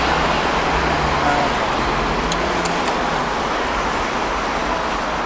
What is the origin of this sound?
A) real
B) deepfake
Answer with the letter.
A